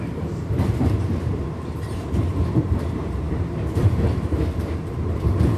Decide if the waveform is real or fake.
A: fake